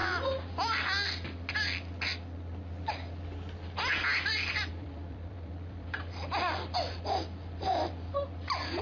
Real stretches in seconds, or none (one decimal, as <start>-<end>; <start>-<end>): 0.0-4.7; 8.1-8.8